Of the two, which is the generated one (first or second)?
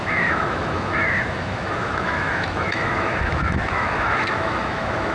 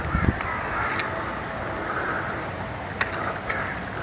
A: first